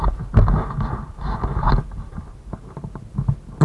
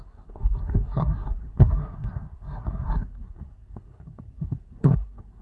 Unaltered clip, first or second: first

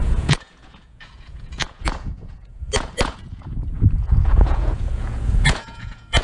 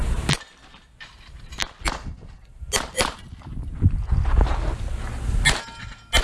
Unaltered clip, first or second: second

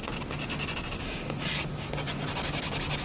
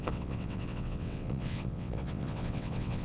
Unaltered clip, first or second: first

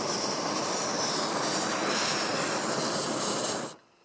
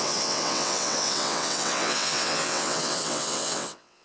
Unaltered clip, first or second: first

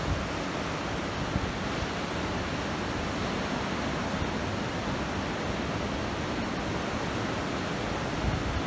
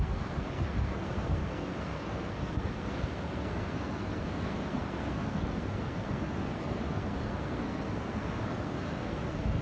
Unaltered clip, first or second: first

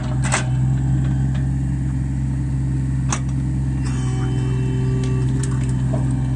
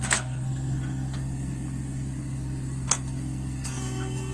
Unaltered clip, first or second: first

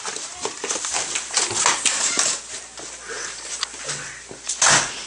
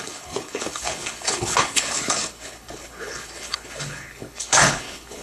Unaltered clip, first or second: first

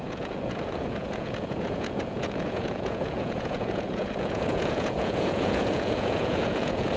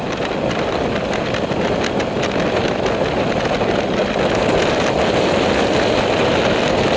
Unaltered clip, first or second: second